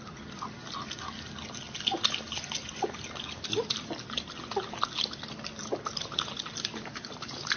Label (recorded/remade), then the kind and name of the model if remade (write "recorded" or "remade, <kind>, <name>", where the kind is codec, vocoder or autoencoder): recorded